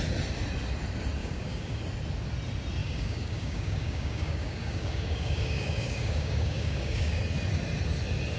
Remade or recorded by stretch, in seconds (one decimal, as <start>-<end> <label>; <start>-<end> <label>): 0.0-1.2 recorded; 1.2-1.8 remade; 1.8-2.8 recorded; 2.8-7.2 remade; 7.2-8.4 recorded